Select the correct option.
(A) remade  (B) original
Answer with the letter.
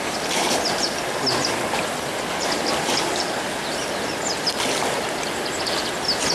B